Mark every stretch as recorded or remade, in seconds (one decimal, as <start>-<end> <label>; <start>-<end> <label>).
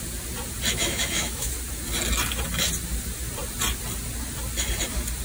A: 0.0-0.8 recorded; 0.8-1.5 remade; 1.5-5.2 recorded